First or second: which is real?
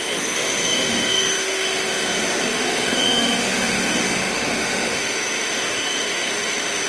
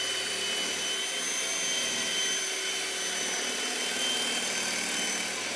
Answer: second